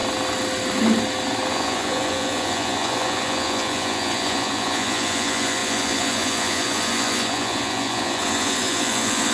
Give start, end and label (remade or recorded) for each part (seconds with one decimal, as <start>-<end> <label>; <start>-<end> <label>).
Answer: 0.0-1.5 recorded; 1.5-9.3 remade